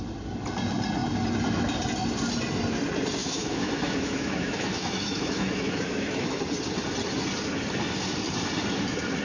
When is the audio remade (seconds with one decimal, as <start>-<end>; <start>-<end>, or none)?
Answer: 3.2-6.4